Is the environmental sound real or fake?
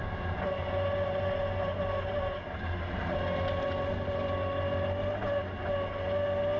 real